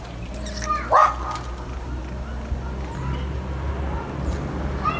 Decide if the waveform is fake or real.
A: real